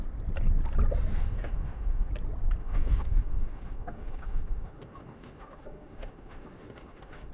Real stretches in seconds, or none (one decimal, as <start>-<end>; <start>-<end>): 0.0-1.1; 2.1-2.6